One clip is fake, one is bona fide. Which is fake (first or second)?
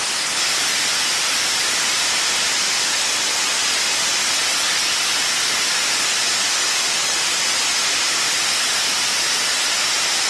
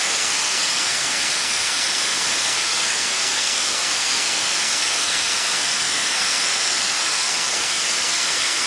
second